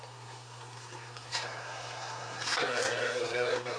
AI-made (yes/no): yes